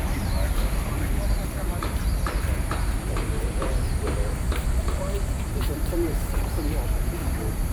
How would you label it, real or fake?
fake